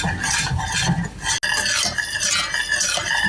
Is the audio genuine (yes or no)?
yes